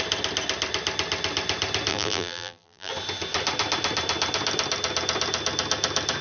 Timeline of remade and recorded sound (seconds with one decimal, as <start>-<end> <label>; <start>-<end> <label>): 0.0-1.9 recorded; 1.9-2.9 remade; 2.9-6.2 recorded